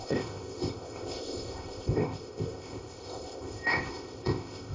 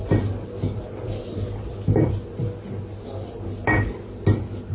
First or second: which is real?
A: second